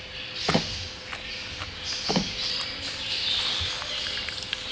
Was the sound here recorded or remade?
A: recorded